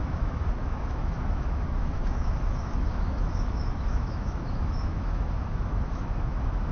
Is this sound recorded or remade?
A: remade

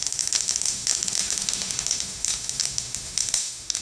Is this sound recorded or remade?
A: remade